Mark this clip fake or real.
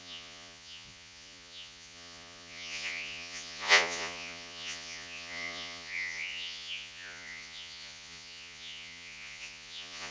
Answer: fake